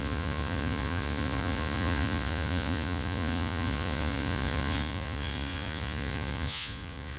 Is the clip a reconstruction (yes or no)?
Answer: yes